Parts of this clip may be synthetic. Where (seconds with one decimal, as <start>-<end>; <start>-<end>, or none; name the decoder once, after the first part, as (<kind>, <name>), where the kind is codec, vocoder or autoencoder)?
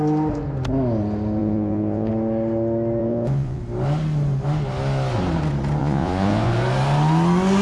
1.4-2.1 (vocoder, Vocos); 3.0-3.6; 5.8-6.5